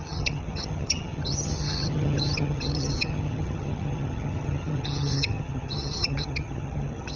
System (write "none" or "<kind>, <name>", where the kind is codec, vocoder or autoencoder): vocoder, HiFi-GAN